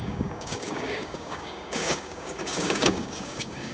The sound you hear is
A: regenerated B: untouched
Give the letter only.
A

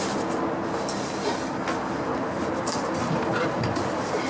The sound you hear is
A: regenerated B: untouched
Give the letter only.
B